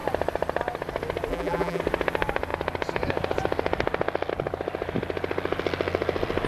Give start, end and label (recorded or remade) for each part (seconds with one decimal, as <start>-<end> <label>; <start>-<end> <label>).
0.0-1.3 recorded; 1.3-1.8 remade; 1.8-6.5 recorded